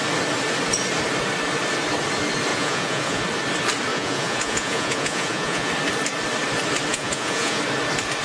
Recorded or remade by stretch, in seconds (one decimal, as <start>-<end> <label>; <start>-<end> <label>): 0.0-2.5 recorded; 2.5-3.2 remade; 3.2-3.9 recorded; 3.9-5.7 remade; 5.7-6.9 recorded; 6.9-7.6 remade; 7.6-8.2 recorded